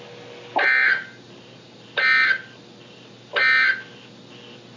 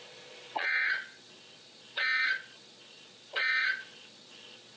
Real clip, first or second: first